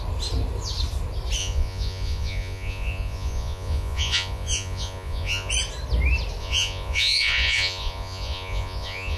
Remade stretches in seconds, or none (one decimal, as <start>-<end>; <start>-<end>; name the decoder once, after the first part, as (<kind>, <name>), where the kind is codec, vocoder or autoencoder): 1.4-5.5 (vocoder, Vocos); 6.4-9.2

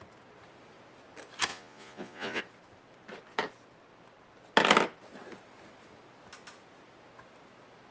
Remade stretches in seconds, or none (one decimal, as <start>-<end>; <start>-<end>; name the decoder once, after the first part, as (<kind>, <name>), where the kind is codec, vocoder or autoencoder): 1.5-2.4 (vocoder, Vocos)

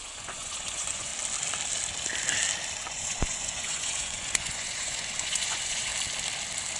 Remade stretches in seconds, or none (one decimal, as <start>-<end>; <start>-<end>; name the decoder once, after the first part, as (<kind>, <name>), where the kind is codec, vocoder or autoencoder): 0.0-1.1 (vocoder, Vocos); 2.8-5.9

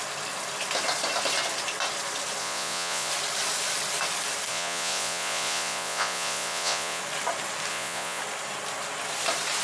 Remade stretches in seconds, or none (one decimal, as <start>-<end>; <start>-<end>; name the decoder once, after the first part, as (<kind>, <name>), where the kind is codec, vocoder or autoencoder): 2.4-3.1 (vocoder, Vocos); 4.5-7.0; 7.7-8.2

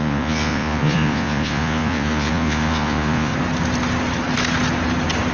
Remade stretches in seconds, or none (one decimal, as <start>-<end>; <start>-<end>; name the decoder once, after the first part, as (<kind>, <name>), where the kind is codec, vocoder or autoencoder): 0.0-3.3 (vocoder, Vocos)